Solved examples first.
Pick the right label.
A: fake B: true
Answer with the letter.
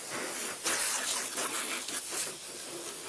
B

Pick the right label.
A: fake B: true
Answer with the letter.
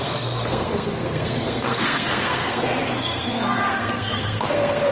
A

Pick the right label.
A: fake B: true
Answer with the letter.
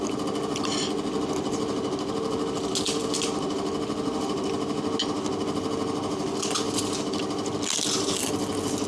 B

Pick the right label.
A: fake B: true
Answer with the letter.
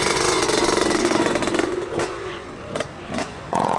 A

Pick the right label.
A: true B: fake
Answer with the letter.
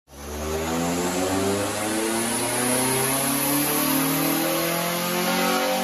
A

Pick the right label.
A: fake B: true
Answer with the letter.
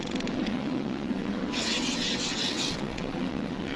A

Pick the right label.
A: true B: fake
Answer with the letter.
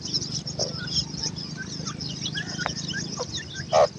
A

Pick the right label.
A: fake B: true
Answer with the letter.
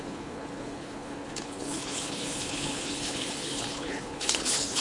A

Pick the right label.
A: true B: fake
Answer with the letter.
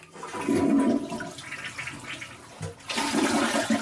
A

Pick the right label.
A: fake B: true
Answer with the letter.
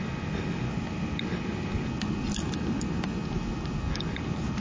B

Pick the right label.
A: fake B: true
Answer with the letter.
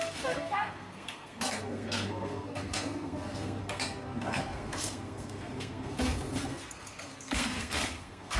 A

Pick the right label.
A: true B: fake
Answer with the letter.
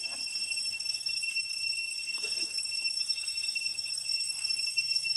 B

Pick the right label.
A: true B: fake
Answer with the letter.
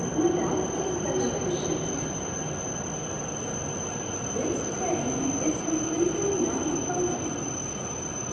A